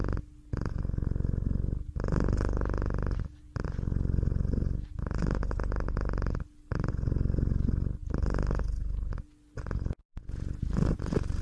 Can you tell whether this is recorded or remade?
recorded